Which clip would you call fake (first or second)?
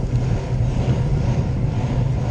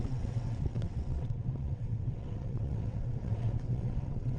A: second